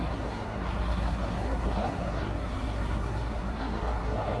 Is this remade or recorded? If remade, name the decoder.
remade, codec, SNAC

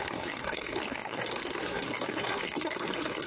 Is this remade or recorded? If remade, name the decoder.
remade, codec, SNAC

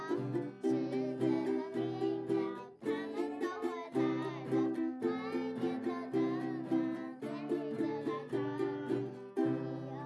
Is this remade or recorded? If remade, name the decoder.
recorded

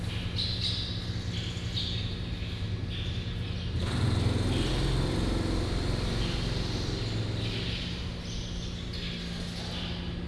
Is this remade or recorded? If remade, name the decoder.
recorded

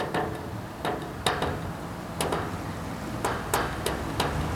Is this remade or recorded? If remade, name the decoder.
recorded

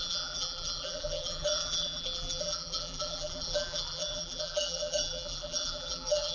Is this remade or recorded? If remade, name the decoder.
remade, vocoder, BigVGAN v2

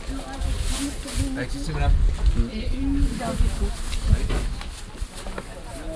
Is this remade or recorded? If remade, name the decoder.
recorded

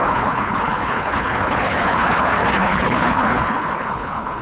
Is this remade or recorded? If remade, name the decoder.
remade, codec, HILCodec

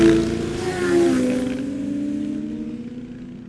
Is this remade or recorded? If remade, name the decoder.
recorded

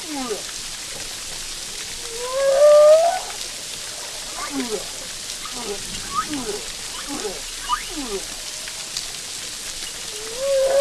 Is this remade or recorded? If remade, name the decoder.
recorded